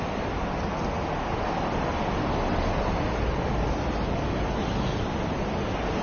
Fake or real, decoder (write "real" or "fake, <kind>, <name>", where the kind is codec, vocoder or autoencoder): real